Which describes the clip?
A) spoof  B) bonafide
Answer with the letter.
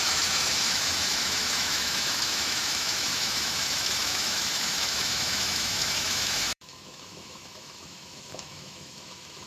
A